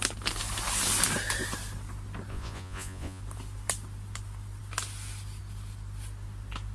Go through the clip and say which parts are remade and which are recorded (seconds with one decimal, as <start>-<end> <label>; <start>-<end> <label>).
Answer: 0.0-2.3 recorded; 2.3-3.2 remade; 3.2-6.7 recorded